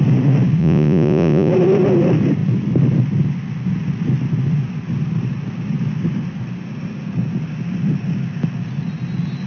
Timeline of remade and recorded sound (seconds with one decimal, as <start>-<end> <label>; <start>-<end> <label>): 0.0-0.6 recorded; 0.6-1.5 remade; 1.5-9.5 recorded